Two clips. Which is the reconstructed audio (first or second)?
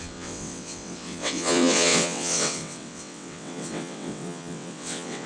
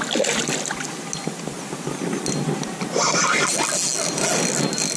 first